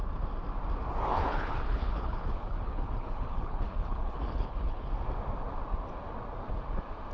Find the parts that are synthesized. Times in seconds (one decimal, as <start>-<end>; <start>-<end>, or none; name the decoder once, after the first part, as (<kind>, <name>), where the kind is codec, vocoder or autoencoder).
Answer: 1.1-4.9 (codec, HILCodec)